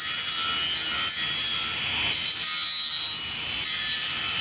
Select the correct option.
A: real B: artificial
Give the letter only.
A